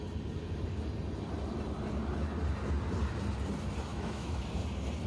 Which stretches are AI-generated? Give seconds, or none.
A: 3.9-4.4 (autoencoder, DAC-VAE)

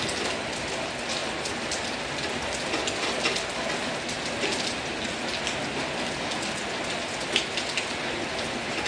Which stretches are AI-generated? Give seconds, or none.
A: none

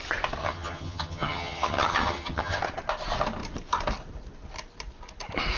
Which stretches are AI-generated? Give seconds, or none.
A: 0.4-2.6 (vocoder, HiFi-GAN)

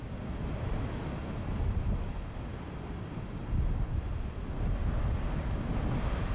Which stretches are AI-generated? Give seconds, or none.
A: 1.2-1.9 (vocoder, BigVGAN v2)

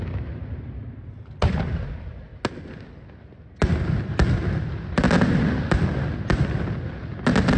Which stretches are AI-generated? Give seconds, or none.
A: none